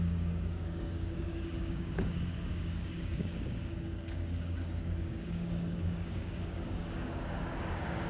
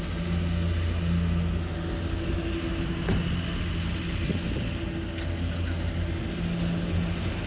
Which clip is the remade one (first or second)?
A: first